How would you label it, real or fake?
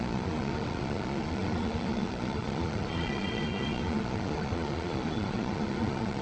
fake